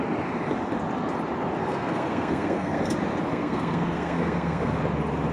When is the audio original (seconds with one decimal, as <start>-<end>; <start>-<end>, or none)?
0.0-1.6; 2.8-3.3; 4.8-5.3